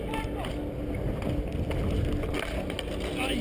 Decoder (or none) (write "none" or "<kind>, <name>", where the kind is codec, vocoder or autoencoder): none